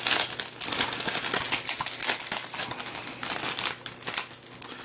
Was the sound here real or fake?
real